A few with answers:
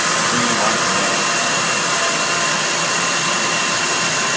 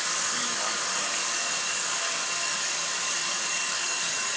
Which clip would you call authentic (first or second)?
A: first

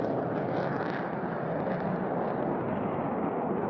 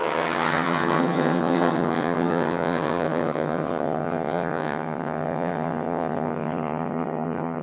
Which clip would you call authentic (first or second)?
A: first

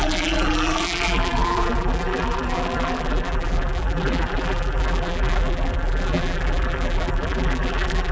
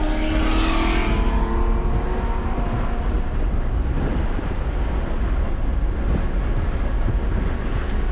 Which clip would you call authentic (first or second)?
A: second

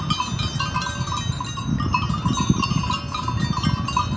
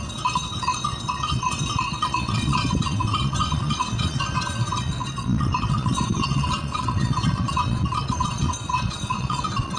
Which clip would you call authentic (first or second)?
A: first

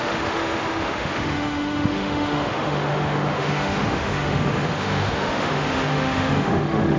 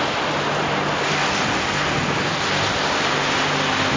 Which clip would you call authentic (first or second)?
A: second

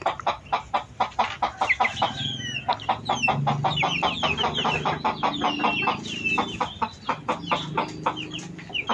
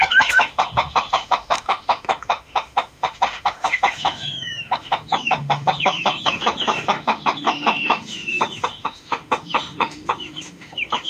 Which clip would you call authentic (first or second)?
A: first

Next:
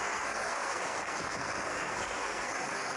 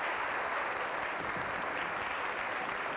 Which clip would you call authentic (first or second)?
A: second